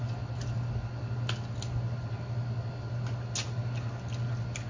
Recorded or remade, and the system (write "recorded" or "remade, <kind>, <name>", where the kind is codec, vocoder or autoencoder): recorded